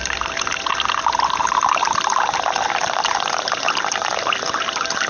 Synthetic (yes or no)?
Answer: no